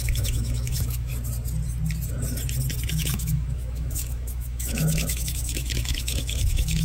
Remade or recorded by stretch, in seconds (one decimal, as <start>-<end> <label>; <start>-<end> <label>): 0.0-1.1 remade; 1.1-2.9 recorded; 2.9-6.8 remade